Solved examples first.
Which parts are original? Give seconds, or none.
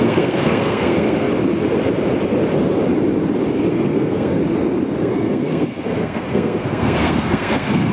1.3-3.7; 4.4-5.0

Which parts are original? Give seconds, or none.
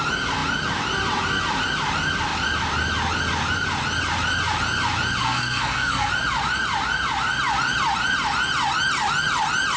0.0-5.2; 6.1-9.8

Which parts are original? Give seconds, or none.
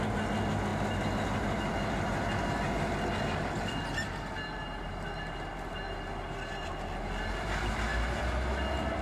0.0-9.0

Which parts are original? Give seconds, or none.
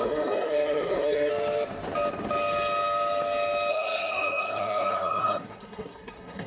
1.3-3.7